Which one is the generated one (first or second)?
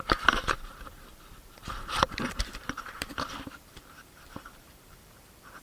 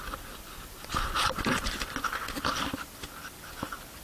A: first